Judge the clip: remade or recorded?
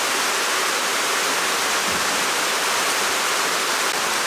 recorded